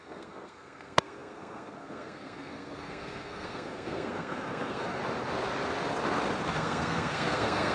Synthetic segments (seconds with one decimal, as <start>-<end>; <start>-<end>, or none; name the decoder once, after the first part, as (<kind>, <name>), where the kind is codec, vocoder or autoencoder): 0.0-5.0 (codec, SNAC); 6.5-7.7